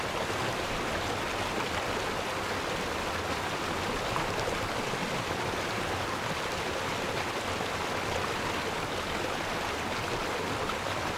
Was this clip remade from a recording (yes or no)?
no